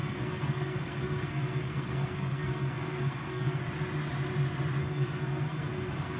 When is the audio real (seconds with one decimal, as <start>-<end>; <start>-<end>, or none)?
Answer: 3.6-4.8